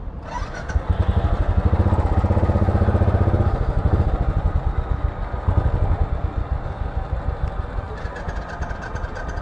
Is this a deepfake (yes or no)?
no